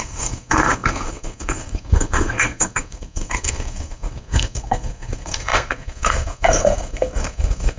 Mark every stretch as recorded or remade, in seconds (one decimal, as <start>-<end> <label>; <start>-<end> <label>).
0.0-7.8 remade